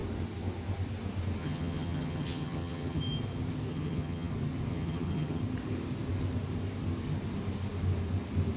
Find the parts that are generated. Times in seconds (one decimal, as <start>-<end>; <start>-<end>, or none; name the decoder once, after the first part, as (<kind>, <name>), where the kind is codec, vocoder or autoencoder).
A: 1.4-3.0 (vocoder, HiFi-GAN); 3.7-4.3; 4.7-5.4